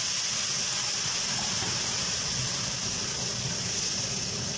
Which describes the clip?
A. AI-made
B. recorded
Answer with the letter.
B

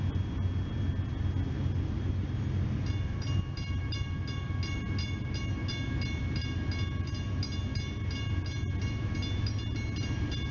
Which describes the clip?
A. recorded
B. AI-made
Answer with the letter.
A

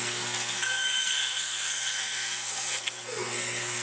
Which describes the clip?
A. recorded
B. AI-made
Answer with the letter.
B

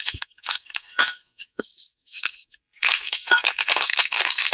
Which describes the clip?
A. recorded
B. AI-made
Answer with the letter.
B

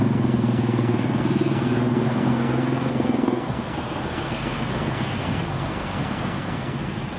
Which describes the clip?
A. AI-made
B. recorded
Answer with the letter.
A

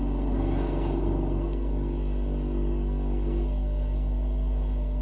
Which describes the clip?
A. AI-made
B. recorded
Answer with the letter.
A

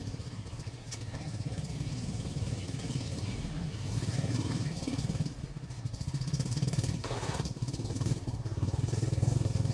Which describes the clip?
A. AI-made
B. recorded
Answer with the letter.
A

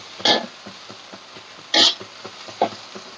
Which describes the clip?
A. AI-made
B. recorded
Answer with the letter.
B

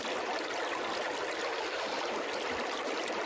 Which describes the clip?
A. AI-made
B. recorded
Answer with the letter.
B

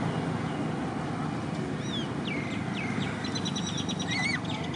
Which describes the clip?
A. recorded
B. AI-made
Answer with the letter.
A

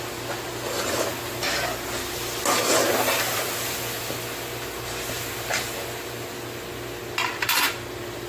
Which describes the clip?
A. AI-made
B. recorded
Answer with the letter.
B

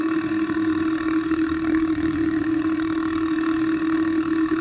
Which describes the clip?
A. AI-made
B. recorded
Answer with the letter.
A